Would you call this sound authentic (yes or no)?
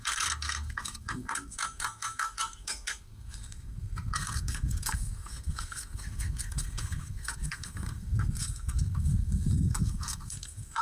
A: no